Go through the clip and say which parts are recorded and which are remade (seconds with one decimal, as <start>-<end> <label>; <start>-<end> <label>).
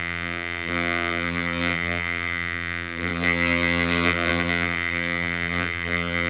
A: 0.0-6.3 remade